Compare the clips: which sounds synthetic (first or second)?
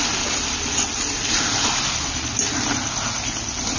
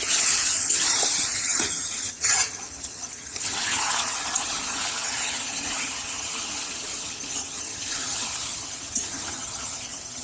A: second